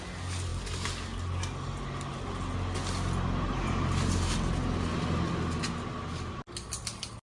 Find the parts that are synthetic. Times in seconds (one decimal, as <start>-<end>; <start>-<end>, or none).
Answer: none